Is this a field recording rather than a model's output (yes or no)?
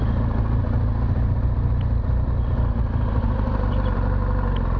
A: yes